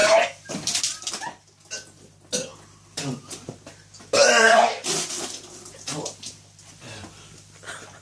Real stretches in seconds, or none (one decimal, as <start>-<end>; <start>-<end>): 1.1-2.5; 3.2-4.2; 6.7-8.0